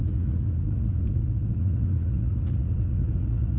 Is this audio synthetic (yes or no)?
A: yes